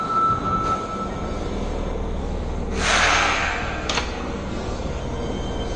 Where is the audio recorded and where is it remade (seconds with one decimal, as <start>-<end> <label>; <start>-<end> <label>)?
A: 0.0-2.2 recorded; 2.2-5.0 remade; 5.0-5.8 recorded